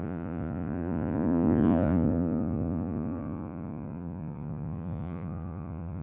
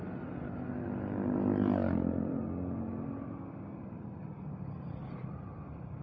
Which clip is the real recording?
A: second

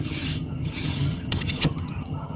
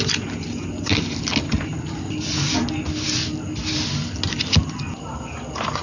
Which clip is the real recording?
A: second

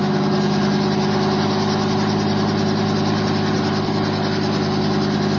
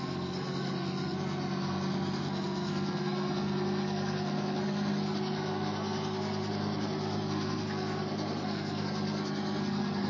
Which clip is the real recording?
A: first